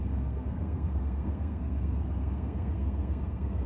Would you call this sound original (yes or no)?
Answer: no